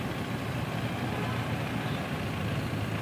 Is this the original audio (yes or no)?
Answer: yes